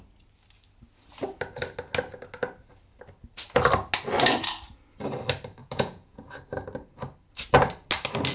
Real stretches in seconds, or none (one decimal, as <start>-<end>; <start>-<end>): 0.0-5.6; 6.3-8.3